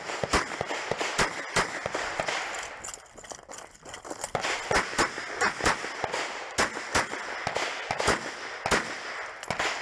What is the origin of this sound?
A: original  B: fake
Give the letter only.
A